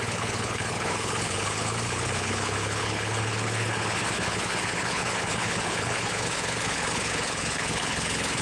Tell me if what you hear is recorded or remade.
remade